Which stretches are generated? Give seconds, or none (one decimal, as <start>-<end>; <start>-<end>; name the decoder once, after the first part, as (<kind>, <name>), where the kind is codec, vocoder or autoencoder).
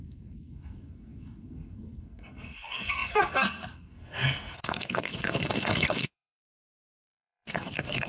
0.0-8.1 (codec, SNAC)